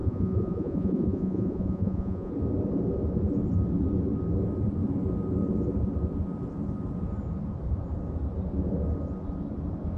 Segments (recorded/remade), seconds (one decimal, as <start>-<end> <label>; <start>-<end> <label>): 0.0-2.3 remade; 2.3-10.0 recorded